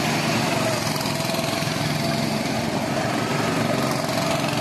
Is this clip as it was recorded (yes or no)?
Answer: yes